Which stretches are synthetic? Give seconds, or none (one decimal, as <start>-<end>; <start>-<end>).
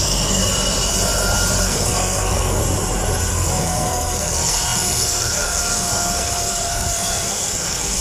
0.0-0.4; 1.6-2.6; 3.3-8.0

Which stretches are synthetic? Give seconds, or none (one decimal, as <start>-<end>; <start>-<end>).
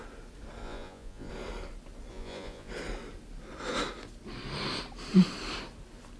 0.6-1.3; 2.1-2.7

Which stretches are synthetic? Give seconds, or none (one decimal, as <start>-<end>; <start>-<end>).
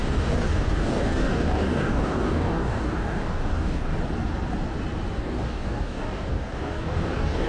0.0-3.9; 5.2-7.5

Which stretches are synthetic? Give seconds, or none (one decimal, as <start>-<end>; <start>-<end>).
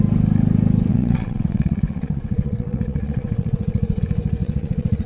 0.9-4.0; 4.4-5.1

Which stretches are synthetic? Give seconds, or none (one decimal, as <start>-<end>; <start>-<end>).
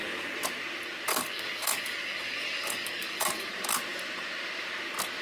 1.1-3.5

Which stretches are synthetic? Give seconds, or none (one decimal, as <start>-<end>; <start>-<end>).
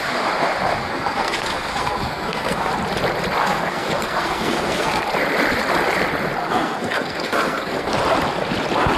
0.8-2.7; 3.4-5.0; 6.4-7.9